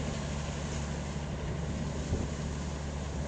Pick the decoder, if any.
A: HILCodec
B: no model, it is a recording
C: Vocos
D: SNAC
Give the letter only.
B